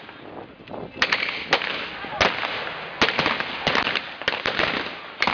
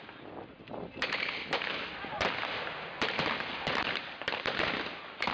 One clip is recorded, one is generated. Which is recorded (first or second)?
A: first